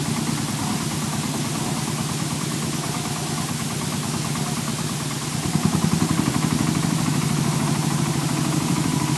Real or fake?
real